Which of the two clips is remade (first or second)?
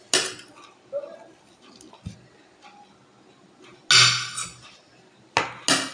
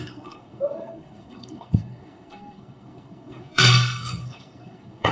second